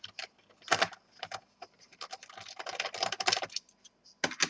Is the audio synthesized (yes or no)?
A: no